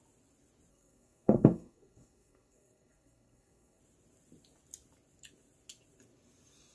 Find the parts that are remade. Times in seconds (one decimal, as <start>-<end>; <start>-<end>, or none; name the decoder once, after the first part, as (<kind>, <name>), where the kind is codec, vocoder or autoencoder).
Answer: 0.7-3.8 (codec, SNAC)